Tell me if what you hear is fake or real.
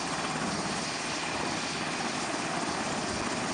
real